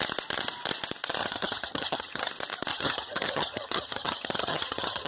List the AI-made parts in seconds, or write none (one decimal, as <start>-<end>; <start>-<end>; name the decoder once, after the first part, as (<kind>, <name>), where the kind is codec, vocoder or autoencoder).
1.2-2.3 (vocoder, HiFi-GAN); 2.7-5.1